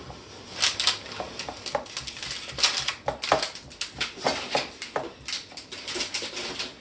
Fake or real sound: real